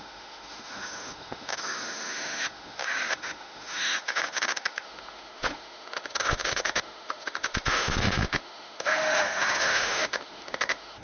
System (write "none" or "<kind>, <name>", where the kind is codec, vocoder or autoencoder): autoencoder, DAC-VAE